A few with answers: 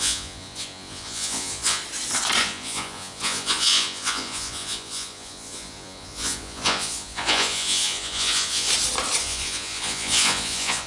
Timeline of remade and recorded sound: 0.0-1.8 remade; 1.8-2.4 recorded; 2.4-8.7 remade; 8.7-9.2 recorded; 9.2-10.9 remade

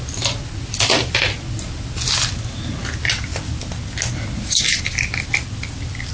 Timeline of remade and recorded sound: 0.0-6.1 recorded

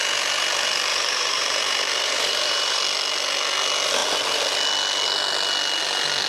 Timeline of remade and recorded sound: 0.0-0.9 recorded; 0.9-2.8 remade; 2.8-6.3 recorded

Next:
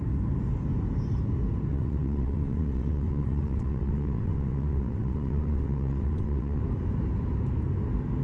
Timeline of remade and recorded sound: 0.0-1.7 recorded; 1.7-6.6 remade; 6.6-8.2 recorded

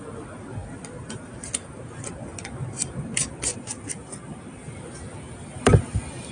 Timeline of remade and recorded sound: 0.0-6.3 recorded